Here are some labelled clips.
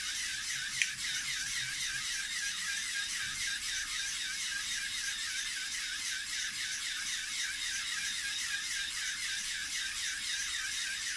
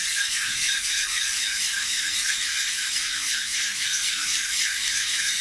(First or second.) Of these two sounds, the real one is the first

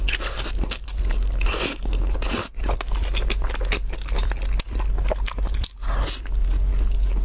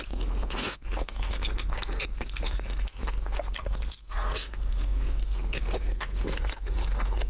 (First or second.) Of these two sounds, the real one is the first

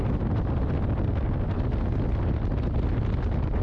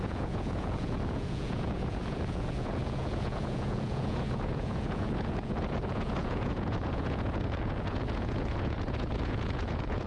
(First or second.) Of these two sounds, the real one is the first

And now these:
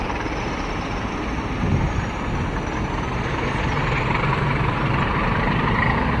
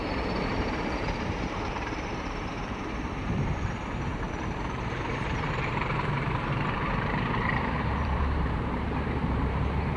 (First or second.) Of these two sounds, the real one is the first